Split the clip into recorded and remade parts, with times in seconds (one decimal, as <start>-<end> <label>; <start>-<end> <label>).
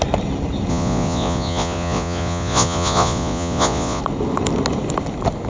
0.0-0.7 recorded; 0.7-4.0 remade; 4.0-5.5 recorded